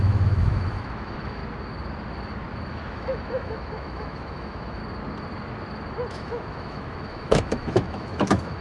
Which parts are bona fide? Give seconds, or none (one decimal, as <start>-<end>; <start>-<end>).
1.4-2.7; 4.8-6.1